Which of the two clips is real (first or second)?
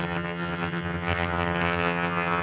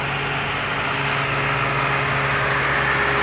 second